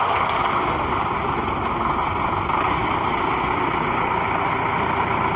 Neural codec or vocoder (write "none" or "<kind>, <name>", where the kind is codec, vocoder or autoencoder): none